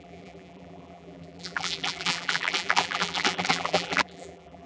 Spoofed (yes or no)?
yes